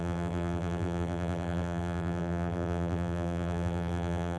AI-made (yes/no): yes